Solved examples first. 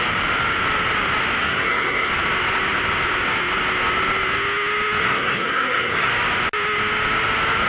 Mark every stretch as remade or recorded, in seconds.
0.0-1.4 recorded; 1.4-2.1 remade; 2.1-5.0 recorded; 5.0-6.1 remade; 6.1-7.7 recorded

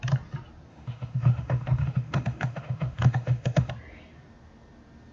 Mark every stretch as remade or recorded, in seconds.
0.0-0.7 recorded; 0.7-3.7 remade; 3.7-5.1 recorded

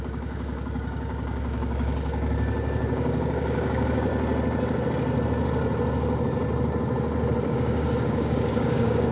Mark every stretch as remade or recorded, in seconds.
0.0-4.1 remade; 4.1-7.5 recorded; 7.5-9.1 remade

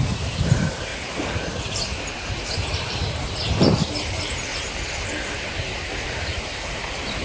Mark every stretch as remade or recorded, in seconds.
0.0-0.9 remade; 0.9-1.6 recorded; 1.6-4.5 remade; 4.5-6.2 recorded; 6.2-7.2 remade